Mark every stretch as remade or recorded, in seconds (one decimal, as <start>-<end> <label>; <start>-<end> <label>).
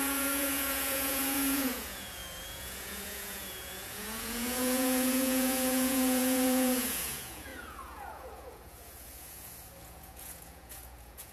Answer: 0.0-11.3 remade